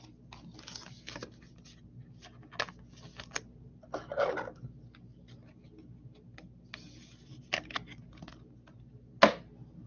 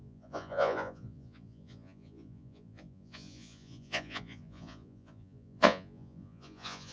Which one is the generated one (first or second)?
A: second